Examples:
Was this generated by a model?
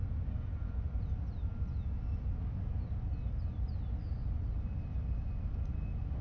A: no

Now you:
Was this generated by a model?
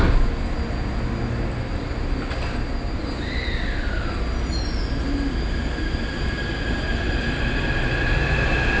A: no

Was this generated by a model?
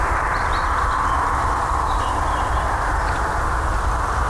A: no